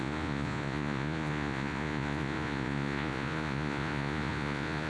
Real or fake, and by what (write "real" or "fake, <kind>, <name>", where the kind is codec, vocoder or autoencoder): fake, vocoder, Vocos